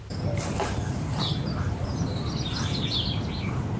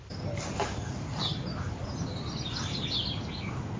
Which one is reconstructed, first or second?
first